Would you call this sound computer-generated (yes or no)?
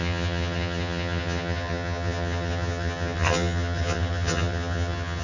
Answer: yes